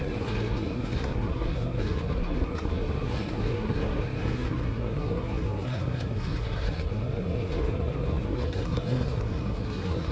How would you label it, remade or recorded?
remade